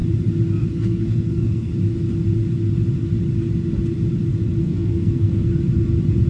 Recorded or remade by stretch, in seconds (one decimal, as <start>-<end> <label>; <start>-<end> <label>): 0.0-0.7 recorded; 0.7-1.7 remade; 1.7-4.6 recorded; 4.6-5.5 remade; 5.5-6.3 recorded